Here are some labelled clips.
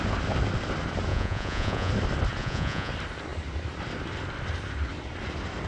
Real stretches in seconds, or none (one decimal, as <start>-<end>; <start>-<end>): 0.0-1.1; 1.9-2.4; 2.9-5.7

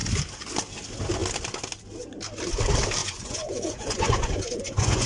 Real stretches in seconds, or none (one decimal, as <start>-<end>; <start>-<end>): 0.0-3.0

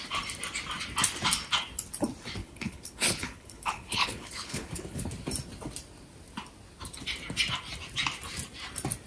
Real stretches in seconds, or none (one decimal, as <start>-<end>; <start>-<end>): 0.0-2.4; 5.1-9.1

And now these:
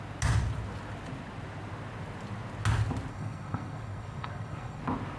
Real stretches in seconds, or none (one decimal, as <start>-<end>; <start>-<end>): 0.0-3.1; 4.8-5.2

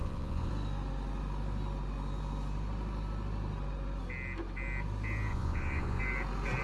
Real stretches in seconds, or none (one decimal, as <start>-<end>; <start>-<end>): 0.5-5.3; 6.0-6.6

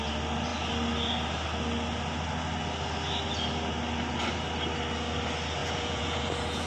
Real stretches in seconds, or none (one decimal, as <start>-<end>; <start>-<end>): 0.0-5.6

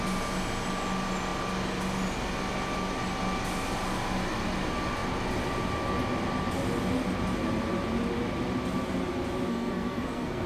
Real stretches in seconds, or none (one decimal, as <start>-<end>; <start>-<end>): 0.0-9.5